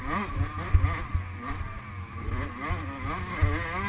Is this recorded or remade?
recorded